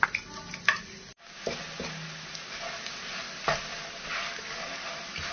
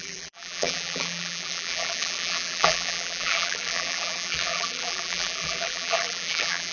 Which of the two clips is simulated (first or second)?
second